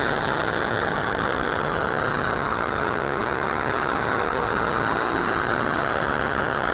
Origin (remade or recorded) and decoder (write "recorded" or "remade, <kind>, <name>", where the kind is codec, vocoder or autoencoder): remade, vocoder, HiFi-GAN